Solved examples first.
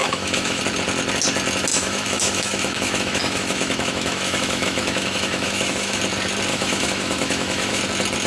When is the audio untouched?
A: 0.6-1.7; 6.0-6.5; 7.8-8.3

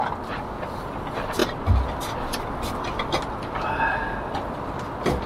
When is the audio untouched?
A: 0.0-5.3

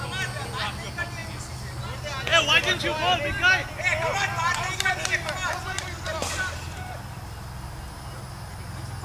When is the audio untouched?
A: 0.0-9.0

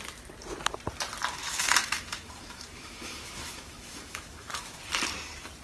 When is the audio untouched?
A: 0.0-1.4; 4.8-5.6

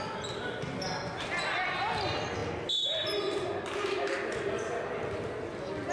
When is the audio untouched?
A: 0.0-5.9

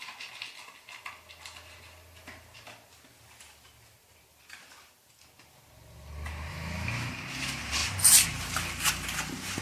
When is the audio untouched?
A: 0.0-6.5; 7.1-9.6

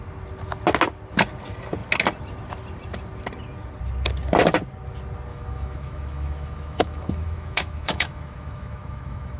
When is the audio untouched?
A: 0.0-5.3